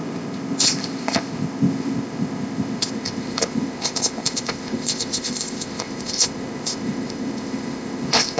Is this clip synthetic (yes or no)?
yes